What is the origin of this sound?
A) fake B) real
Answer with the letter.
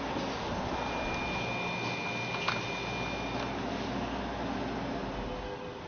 B